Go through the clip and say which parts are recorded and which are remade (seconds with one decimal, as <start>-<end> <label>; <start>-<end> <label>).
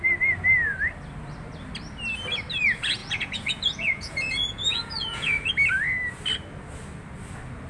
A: 0.0-3.0 recorded; 3.0-5.5 remade; 5.5-7.7 recorded